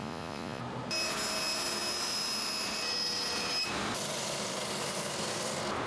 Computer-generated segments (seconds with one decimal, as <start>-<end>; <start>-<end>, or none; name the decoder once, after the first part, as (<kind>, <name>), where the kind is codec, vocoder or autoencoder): 0.0-0.6 (vocoder, Vocos)